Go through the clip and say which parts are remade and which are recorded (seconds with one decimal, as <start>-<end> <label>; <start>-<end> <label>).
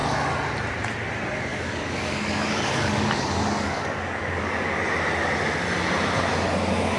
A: 0.0-1.5 recorded; 1.5-4.8 remade; 4.8-7.0 recorded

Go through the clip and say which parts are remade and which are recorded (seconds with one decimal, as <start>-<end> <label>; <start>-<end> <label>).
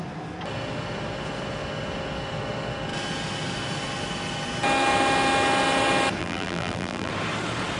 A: 0.0-6.2 recorded; 6.2-7.1 remade; 7.1-7.8 recorded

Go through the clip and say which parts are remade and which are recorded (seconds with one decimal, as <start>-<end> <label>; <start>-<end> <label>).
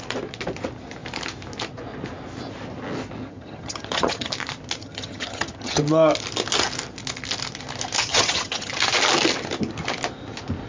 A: 0.0-3.2 recorded; 3.2-4.3 remade; 4.3-4.8 recorded; 4.8-5.8 remade; 5.8-8.1 recorded; 8.1-8.7 remade; 8.7-10.7 recorded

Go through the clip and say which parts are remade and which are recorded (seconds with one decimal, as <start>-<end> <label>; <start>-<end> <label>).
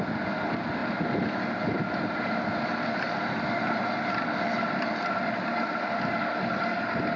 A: 0.0-7.2 recorded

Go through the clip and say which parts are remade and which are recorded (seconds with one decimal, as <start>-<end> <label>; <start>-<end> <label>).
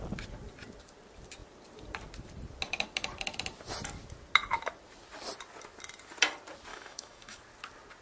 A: 0.0-6.7 recorded; 6.7-7.4 remade; 7.4-8.0 recorded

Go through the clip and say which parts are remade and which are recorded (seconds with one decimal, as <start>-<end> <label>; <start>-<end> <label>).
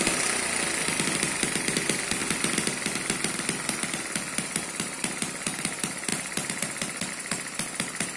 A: 0.0-8.2 recorded